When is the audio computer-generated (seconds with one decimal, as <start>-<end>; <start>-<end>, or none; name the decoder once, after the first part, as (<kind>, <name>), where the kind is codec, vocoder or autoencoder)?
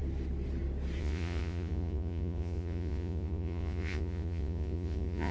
1.0-5.3 (vocoder, Vocos)